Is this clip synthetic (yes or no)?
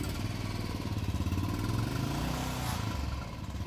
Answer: no